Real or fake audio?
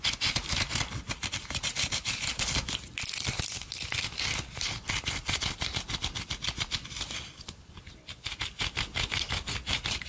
real